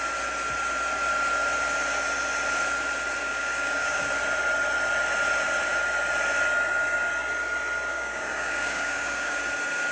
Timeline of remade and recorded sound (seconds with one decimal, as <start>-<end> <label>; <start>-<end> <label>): 0.0-3.2 recorded; 3.2-4.1 remade; 4.1-7.9 recorded; 7.9-9.4 remade; 9.4-9.9 recorded